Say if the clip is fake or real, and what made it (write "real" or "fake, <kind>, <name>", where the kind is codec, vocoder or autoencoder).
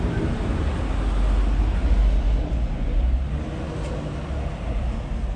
real